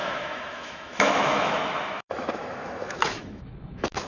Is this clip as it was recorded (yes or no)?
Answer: no